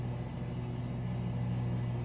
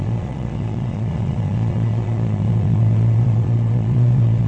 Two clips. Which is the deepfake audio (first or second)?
second